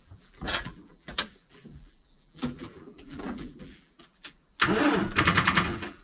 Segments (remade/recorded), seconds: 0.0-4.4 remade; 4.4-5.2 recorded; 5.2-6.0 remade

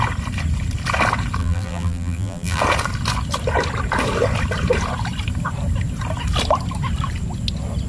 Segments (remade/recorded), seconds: 0.0-1.4 recorded; 1.4-2.6 remade; 2.6-7.9 recorded

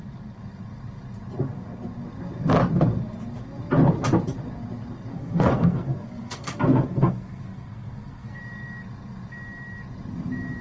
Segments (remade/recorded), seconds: 0.0-5.1 recorded; 5.1-8.4 remade; 8.4-10.6 recorded